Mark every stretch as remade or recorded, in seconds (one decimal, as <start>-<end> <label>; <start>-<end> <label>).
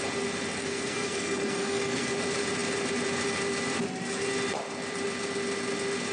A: 0.0-0.6 recorded; 0.6-2.1 remade; 2.1-6.1 recorded